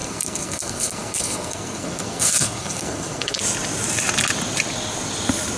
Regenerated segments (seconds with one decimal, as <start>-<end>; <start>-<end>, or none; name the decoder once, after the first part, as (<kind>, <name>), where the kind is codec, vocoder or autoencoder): 0.0-3.4 (codec, SNAC)